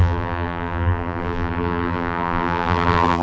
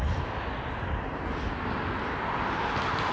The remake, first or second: first